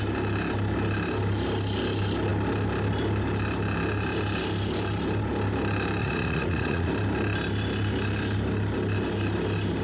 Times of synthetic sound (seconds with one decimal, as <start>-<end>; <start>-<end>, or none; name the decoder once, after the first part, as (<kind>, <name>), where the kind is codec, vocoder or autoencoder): 6.0-6.9 (vocoder, Vocos)